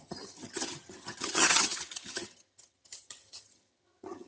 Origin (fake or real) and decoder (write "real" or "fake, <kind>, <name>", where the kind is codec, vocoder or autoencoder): fake, vocoder, HiFi-GAN